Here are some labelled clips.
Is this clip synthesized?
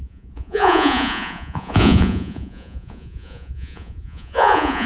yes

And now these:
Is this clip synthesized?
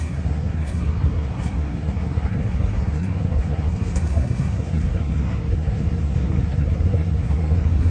yes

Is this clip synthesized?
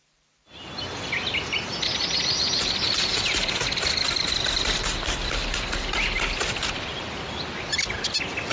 no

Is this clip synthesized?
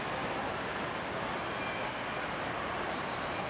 no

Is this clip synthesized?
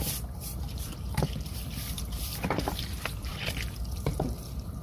yes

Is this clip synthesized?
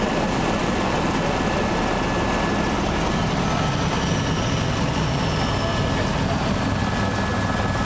no